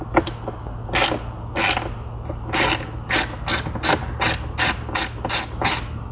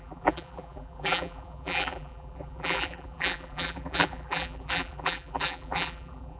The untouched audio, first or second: first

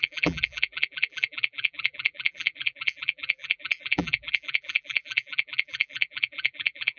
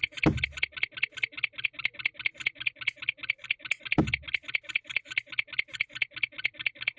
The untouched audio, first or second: second